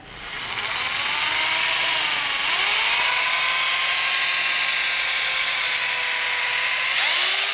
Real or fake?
real